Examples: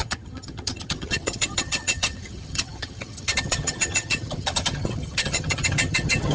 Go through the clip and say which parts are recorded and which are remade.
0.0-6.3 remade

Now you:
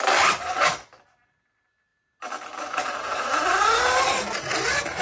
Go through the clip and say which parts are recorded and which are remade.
0.0-5.0 recorded